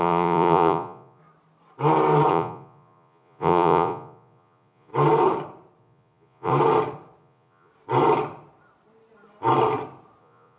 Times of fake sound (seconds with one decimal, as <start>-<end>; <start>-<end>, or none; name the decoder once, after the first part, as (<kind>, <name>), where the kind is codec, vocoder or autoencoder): 0.0-1.2 (vocoder, Vocos); 2.3-4.9; 5.8-6.5; 7.2-7.7; 10.2-10.6